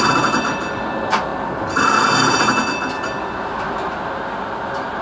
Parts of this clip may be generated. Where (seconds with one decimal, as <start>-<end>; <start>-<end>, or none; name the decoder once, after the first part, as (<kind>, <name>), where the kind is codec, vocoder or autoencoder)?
none